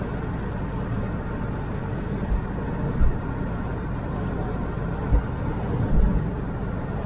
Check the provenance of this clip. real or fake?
real